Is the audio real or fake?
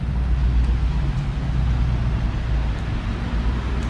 real